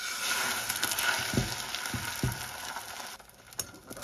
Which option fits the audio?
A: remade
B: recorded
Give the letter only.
B